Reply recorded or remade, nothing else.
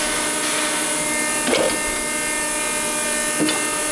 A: recorded